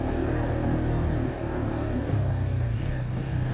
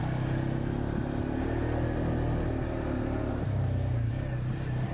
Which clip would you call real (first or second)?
second